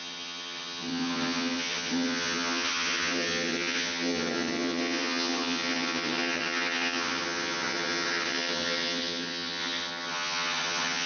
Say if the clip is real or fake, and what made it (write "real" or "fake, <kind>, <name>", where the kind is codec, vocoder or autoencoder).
fake, vocoder, HiFi-GAN